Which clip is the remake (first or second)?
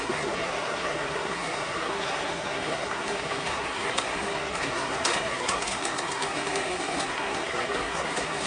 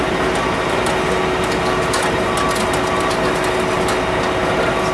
first